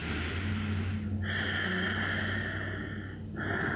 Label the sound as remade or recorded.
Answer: recorded